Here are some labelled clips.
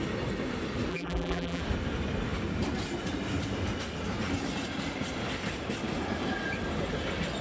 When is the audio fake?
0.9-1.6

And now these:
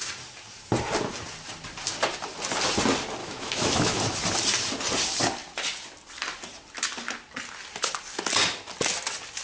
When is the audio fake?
3.2-4.0

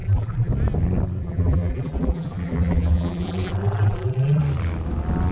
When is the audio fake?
0.0-0.5; 1.2-4.4

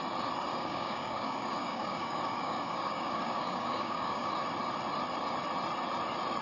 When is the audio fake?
0.5-4.3

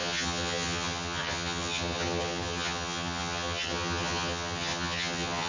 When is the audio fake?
0.0-5.5